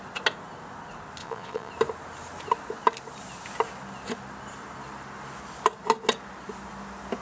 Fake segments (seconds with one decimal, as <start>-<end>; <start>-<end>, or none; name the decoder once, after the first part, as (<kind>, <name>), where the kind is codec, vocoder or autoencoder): 1.2-1.7 (vocoder, Vocos)